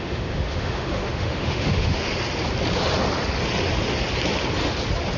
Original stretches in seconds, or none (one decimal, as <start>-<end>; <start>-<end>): 2.1-5.2